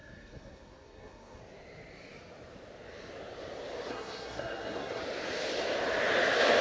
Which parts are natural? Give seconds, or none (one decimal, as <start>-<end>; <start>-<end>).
1.4-3.9; 5.0-6.6